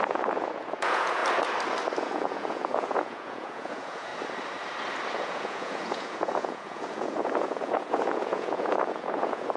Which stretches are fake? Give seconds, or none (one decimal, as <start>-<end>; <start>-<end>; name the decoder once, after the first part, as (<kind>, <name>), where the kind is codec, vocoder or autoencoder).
0.0-1.2 (vocoder, Vocos); 2.0-4.1; 5.1-9.6